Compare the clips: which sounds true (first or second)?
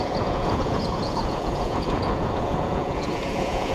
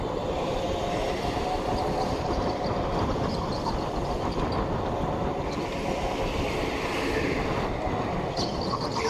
second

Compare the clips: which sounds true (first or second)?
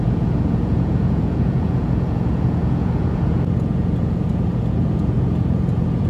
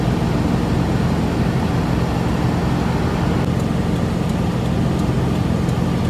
second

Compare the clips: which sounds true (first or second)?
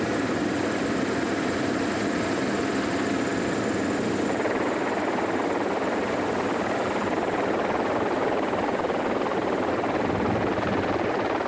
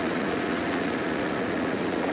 first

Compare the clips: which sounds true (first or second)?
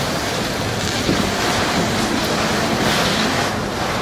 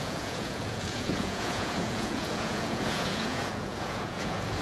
first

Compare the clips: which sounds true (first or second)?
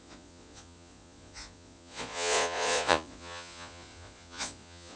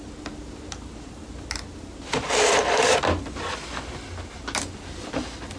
second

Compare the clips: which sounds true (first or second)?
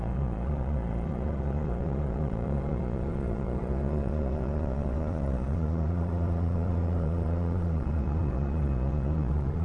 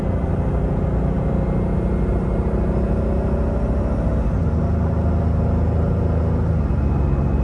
second